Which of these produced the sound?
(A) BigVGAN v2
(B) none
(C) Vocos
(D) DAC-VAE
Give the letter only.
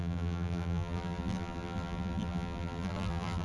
A